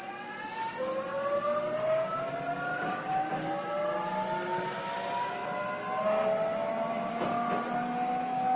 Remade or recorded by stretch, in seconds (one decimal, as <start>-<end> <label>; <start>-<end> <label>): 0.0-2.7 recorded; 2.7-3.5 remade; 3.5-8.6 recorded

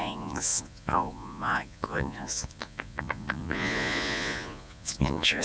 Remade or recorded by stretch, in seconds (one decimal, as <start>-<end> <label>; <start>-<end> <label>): 0.0-5.4 remade

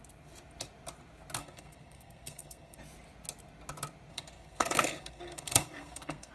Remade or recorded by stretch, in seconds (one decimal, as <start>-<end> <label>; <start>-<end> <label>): 0.0-1.4 recorded; 1.4-2.8 remade; 2.8-4.1 recorded; 4.1-6.3 remade

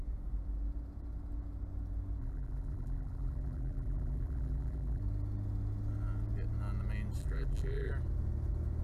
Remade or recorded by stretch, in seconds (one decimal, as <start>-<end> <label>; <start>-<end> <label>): 0.0-2.2 recorded; 2.2-5.0 remade; 5.0-7.2 recorded; 7.2-7.9 remade; 7.9-8.8 recorded